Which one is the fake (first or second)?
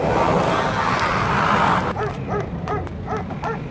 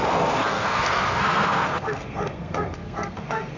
second